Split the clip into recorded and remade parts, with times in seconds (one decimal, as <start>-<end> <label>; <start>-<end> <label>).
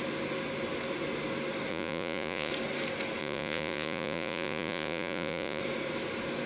0.0-1.7 recorded; 1.7-2.5 remade; 2.5-3.2 recorded; 3.2-5.6 remade; 5.6-6.5 recorded